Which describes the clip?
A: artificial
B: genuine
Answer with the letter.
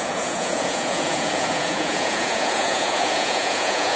A